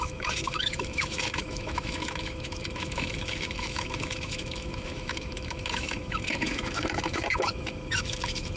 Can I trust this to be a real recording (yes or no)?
no